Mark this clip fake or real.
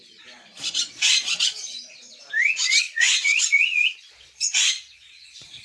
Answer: fake